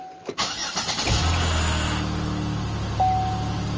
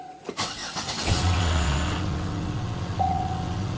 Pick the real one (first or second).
first